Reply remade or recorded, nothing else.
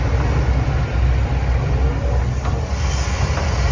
recorded